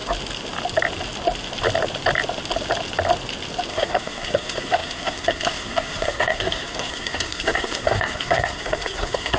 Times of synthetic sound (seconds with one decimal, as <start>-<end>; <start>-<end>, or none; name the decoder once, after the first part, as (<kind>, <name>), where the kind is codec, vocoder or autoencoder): 3.7-9.4 (codec, SNAC)